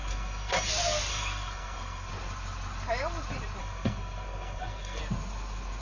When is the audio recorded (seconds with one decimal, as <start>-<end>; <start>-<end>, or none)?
0.7-1.1; 2.1-3.6; 5.0-5.8